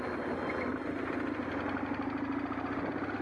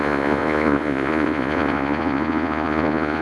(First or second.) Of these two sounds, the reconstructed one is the second